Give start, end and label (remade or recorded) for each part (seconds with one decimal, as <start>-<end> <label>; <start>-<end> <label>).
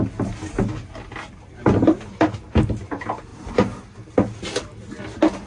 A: 0.0-5.5 recorded